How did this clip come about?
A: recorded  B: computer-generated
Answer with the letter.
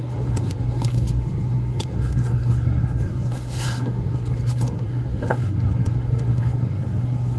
B